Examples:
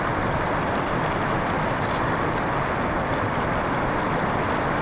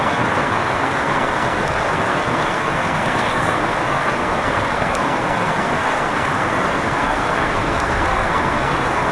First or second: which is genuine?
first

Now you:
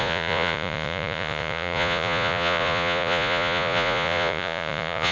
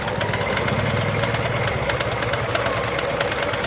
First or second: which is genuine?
second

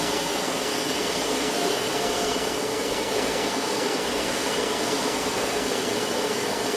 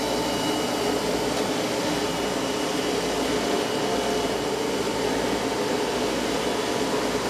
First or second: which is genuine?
second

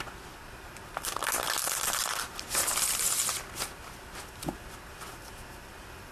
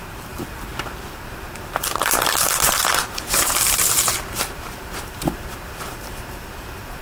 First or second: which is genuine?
first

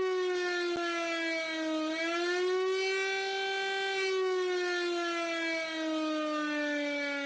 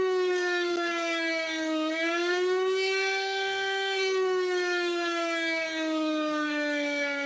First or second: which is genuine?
first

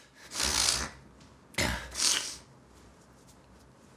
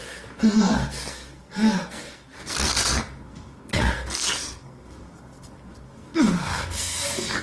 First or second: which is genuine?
first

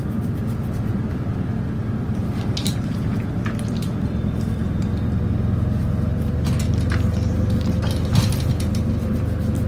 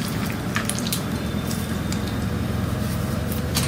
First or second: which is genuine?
first